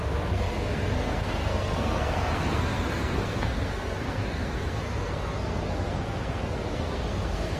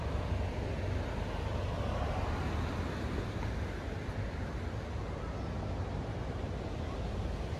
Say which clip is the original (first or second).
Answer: second